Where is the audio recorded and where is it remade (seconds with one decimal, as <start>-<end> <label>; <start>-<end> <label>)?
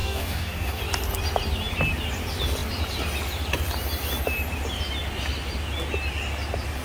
0.0-0.8 remade; 0.8-6.8 recorded